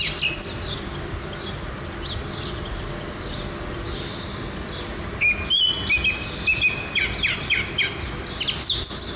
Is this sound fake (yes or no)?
no